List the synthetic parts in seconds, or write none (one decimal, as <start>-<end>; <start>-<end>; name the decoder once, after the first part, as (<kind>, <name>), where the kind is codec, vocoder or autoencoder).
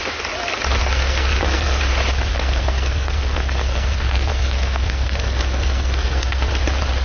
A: 0.8-1.8 (codec, SNAC); 2.3-6.5